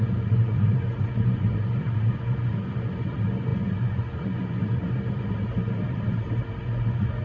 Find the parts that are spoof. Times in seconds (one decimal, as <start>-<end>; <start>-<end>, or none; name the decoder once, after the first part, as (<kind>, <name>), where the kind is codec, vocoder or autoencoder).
0.0-4.8 (vocoder, Vocos); 6.6-7.2